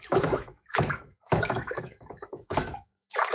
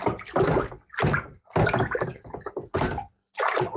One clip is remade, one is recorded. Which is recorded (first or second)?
second